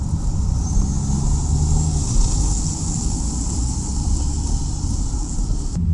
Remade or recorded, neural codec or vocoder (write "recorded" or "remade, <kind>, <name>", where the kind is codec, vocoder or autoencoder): recorded